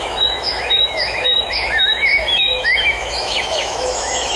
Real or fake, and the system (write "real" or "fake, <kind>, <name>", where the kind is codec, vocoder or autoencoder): fake, autoencoder, DAC-VAE